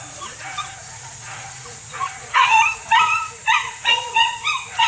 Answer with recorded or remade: remade